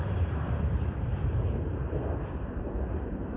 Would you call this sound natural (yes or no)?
no